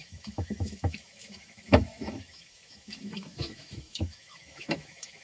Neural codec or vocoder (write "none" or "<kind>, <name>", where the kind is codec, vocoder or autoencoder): autoencoder, DAC-VAE